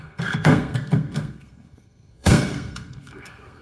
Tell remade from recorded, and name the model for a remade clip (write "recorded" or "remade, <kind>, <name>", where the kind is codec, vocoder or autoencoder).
remade, codec, SNAC